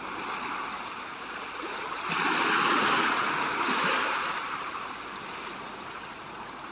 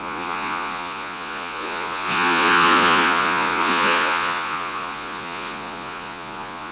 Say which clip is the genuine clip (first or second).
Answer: first